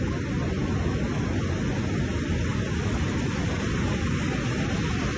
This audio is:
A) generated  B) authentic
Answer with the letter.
B